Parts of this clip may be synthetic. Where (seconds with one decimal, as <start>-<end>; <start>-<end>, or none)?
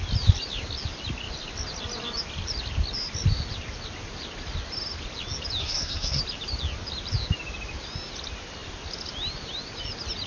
5.6-6.2